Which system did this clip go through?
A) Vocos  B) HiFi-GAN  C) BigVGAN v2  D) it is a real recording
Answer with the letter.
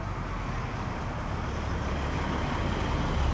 D